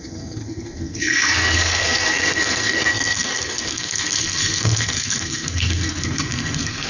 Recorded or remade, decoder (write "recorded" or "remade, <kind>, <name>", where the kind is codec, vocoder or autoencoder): remade, codec, SNAC